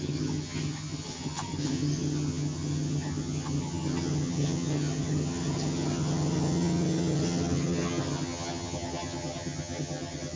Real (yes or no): no